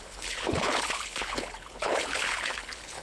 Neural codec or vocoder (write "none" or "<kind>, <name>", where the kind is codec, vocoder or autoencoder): codec, HILCodec